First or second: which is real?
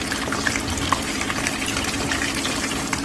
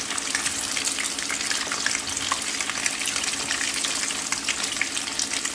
second